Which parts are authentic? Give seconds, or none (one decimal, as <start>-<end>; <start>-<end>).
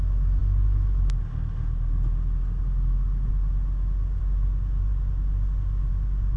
0.0-6.4